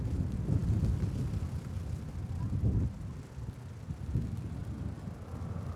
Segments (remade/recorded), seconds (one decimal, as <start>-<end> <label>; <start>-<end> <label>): 0.0-5.8 recorded